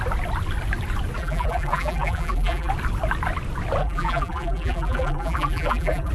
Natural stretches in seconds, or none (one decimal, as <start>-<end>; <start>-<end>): 0.0-1.2; 2.7-3.8